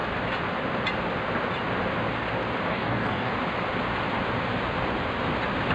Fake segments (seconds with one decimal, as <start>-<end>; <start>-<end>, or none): 2.7-3.3